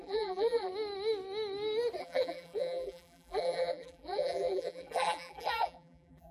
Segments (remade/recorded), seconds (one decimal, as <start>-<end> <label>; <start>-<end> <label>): 0.0-0.7 remade; 0.7-2.0 recorded; 2.0-6.3 remade